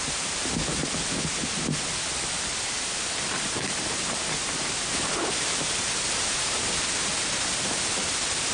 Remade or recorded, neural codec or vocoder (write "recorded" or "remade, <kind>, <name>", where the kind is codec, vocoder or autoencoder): recorded